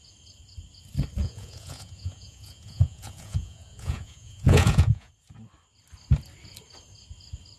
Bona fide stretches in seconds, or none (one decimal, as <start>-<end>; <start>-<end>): 0.0-1.2; 5.1-7.6